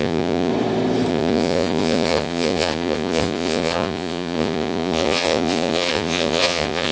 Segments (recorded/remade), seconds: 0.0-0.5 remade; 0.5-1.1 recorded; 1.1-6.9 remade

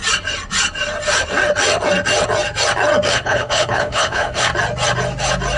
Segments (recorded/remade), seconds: 0.0-3.1 recorded; 3.1-4.5 remade; 4.5-5.6 recorded